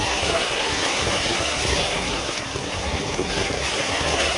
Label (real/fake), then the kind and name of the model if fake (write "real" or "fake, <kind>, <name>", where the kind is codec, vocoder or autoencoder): fake, codec, SNAC